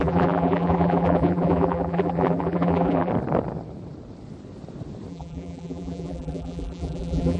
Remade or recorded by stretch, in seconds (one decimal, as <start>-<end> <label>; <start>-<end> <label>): 0.0-3.1 remade; 3.1-5.1 recorded; 5.1-7.4 remade